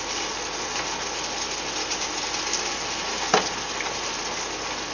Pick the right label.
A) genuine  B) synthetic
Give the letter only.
A